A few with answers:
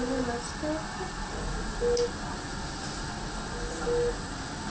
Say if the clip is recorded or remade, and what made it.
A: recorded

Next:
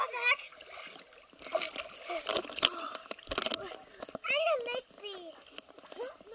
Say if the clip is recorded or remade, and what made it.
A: recorded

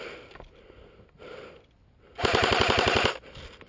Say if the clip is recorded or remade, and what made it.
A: recorded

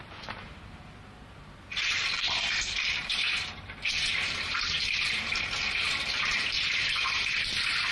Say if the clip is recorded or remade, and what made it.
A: remade, vocoder, BigVGAN v2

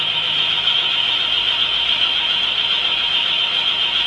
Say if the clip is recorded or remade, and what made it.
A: remade, autoencoder, DAC-VAE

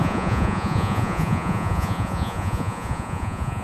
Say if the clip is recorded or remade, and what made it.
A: remade, vocoder, Vocos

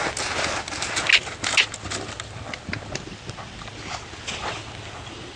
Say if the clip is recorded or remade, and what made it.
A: recorded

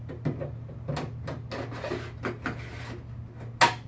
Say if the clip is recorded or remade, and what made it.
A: recorded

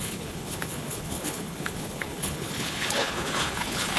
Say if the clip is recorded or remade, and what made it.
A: remade, codec, HILCodec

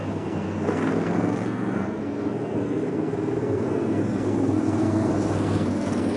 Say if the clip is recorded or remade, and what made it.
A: remade, codec, SNAC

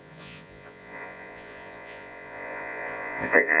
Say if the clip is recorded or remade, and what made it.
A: remade, vocoder, Vocos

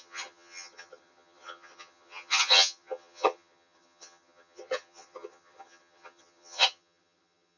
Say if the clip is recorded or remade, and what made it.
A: remade, vocoder, HiFi-GAN